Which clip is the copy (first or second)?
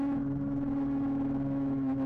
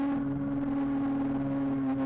first